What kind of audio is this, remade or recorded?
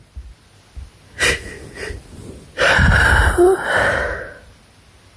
recorded